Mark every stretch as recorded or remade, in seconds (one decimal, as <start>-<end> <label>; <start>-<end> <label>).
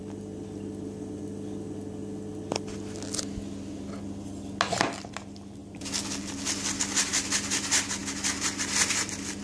0.0-9.4 recorded